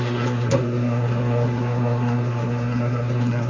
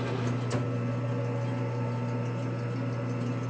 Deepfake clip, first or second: first